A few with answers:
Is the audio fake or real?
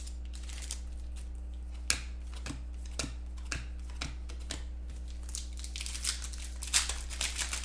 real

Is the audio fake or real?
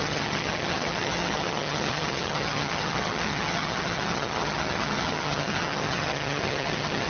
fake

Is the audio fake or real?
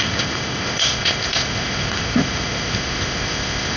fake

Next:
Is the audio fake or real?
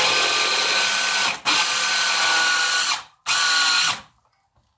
real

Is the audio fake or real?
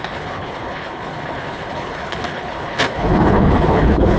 fake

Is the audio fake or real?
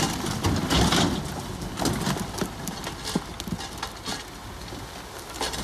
real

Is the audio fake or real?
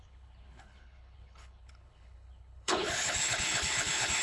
fake